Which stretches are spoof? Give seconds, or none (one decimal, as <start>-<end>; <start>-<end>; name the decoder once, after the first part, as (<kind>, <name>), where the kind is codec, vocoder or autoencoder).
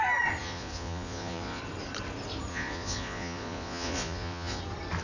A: 0.4-1.6 (vocoder, Vocos); 2.5-4.6